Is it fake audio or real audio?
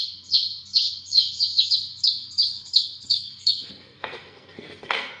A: fake